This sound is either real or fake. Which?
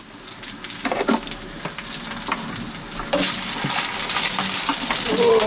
real